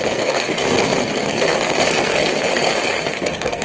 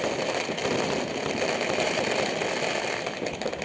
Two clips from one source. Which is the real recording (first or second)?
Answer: second